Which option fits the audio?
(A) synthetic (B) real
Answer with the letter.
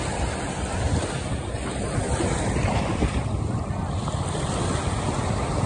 B